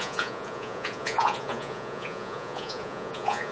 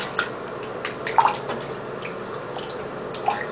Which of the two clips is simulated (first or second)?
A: first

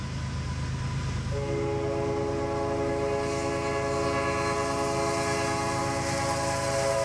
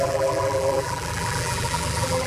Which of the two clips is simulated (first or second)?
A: second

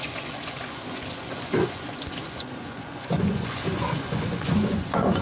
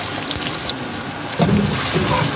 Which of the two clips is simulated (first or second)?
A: first